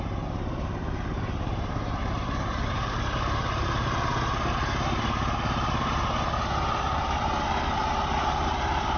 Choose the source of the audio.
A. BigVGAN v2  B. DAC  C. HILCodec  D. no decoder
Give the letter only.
A